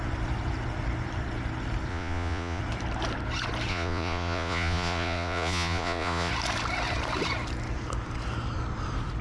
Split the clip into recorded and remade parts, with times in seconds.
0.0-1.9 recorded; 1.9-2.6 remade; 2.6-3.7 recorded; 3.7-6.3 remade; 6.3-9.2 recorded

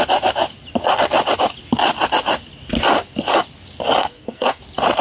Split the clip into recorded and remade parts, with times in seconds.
0.0-4.0 recorded; 4.0-4.6 remade; 4.6-5.0 recorded

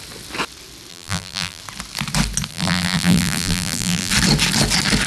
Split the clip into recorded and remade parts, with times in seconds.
0.0-0.9 recorded; 0.9-1.6 remade; 1.6-2.5 recorded; 2.5-4.1 remade; 4.1-5.1 recorded

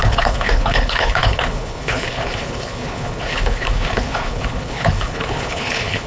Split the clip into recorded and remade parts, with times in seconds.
0.0-6.1 remade

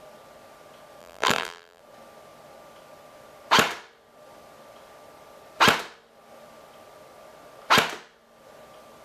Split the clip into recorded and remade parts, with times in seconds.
0.0-1.0 recorded; 1.0-1.8 remade; 1.8-9.0 recorded

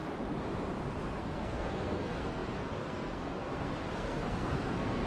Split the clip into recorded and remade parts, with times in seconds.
0.0-1.1 recorded; 1.1-5.1 remade

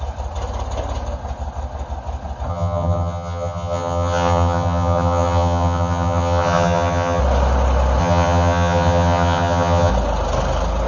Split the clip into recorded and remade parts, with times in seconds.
0.0-2.5 recorded; 2.5-7.2 remade; 7.2-8.0 recorded; 8.0-9.9 remade; 9.9-10.9 recorded